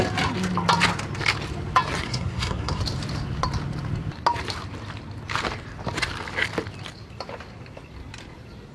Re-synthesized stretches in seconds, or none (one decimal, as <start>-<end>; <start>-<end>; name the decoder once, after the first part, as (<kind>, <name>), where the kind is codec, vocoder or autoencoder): 2.0-2.8 (codec, SNAC)